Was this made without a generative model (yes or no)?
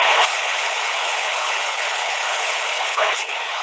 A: no